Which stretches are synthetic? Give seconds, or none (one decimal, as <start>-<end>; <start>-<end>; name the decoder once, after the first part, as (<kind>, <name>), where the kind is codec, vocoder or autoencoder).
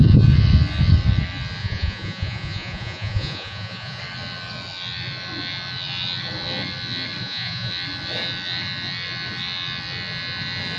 1.6-4.0 (vocoder, Vocos); 7.2-7.7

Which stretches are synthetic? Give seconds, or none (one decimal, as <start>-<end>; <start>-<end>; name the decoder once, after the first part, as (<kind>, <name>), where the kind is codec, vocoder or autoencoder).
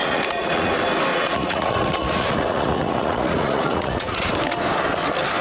0.0-0.7 (vocoder, Vocos); 1.1-4.3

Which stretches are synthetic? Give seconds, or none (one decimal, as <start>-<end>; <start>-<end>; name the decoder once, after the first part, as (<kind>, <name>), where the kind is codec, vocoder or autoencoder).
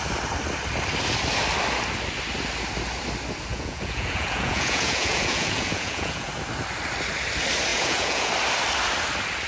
3.5-6.3 (vocoder, Vocos); 7.7-8.3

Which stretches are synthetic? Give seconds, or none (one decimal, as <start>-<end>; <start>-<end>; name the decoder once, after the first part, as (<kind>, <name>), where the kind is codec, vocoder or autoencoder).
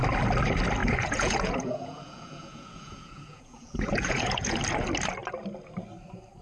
0.8-4.6 (vocoder, Vocos)